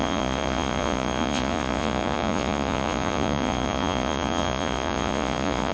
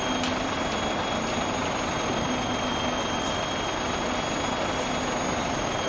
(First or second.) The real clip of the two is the second